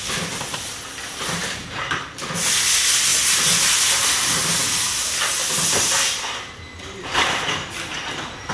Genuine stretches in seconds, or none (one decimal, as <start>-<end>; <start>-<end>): 0.0-8.5